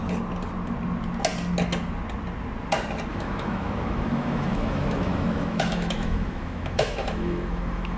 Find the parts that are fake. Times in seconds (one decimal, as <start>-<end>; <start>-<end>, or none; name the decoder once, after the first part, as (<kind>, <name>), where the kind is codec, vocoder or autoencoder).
3.1-8.0 (autoencoder, DAC-VAE)